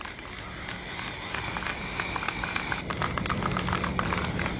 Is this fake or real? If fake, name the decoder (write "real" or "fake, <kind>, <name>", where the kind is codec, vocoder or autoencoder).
real